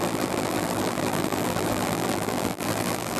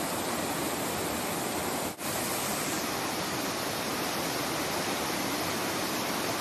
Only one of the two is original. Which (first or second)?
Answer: second